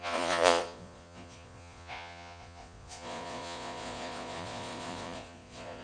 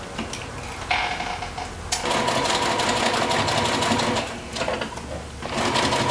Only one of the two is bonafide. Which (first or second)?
second